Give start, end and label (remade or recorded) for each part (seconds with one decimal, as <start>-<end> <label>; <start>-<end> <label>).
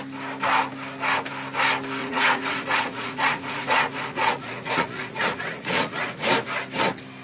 0.0-2.0 recorded; 2.0-6.3 remade; 6.3-7.2 recorded